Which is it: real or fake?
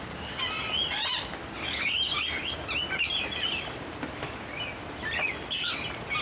real